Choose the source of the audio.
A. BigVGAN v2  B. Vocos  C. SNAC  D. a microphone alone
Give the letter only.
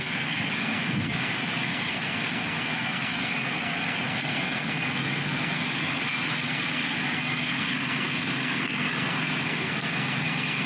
C